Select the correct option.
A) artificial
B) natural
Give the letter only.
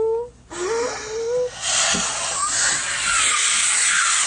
B